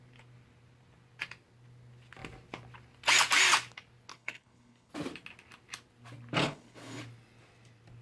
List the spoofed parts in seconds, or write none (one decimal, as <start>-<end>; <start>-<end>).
4.1-4.9; 6.4-7.0